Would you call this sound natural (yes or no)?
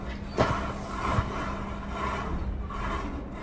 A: yes